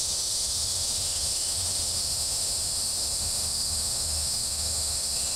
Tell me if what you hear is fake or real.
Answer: fake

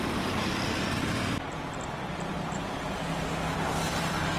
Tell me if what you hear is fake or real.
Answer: real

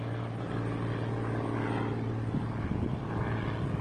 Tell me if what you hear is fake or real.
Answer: real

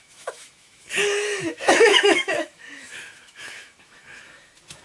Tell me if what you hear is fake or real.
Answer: fake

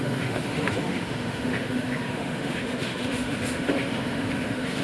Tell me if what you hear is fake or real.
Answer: fake